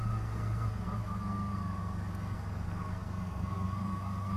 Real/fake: fake